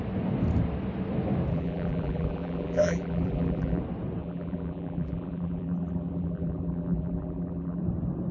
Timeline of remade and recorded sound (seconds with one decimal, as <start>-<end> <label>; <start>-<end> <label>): 0.0-1.5 recorded; 1.5-3.8 remade; 3.8-4.2 recorded; 4.2-7.8 remade; 7.8-8.3 recorded